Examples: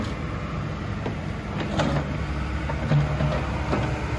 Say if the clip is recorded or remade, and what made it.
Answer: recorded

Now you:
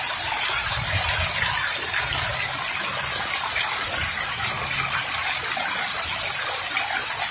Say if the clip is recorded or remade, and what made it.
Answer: recorded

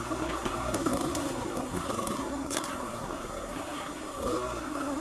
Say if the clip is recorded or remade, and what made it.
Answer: remade, codec, SNAC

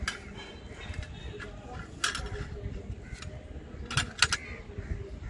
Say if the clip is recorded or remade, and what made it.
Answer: recorded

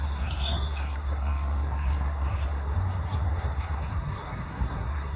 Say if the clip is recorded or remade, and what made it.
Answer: remade, codec, SNAC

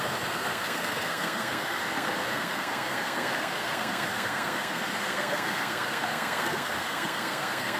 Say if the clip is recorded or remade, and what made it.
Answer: remade, codec, SNAC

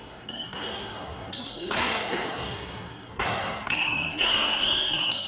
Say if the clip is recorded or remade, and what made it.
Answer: remade, codec, SNAC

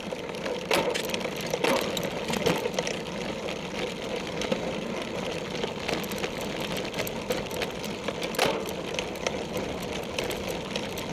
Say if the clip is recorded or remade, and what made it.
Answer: recorded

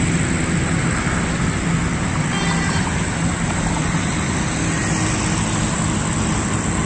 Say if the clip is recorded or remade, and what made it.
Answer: recorded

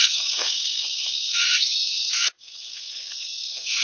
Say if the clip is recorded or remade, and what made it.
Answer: remade, codec, SNAC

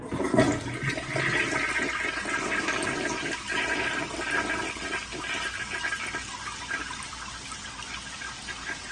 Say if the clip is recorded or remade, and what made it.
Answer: recorded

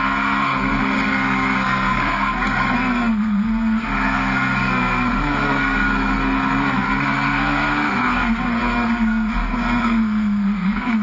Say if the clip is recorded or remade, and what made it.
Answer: remade, codec, SNAC